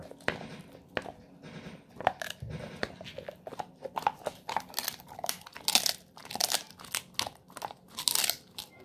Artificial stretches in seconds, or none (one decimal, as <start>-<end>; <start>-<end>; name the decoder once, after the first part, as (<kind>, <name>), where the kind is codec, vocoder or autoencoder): none